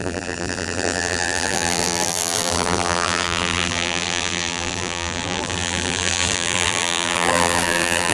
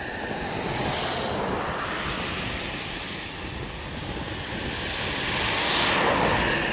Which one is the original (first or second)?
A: second